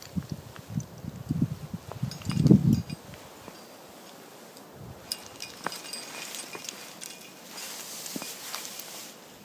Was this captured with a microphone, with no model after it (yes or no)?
yes